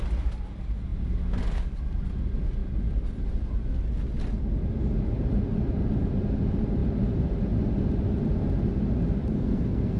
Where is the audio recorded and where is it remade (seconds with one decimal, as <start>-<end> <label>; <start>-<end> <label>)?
0.0-9.3 recorded; 9.3-10.0 remade